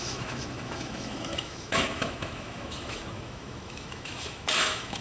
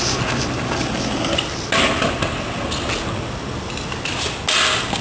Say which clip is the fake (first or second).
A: first